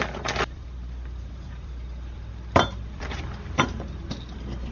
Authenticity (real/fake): fake